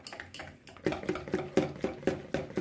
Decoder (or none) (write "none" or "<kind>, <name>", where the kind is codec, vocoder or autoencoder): none